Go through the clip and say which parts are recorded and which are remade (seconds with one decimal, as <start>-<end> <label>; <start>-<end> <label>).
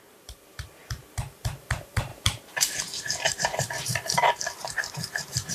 0.0-0.8 remade; 0.8-1.7 recorded; 1.7-5.5 remade